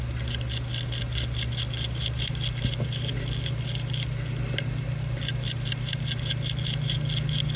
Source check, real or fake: real